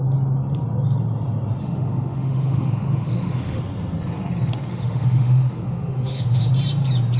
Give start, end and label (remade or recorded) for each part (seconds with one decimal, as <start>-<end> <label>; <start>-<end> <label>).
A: 0.0-1.6 recorded; 1.6-3.6 remade; 3.6-4.7 recorded; 4.7-6.5 remade; 6.5-7.2 recorded